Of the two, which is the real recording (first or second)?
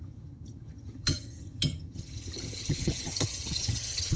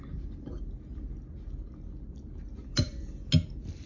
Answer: second